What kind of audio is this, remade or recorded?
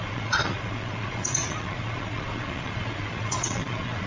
remade